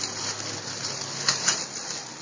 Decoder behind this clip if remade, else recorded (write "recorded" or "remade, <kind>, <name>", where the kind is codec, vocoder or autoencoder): recorded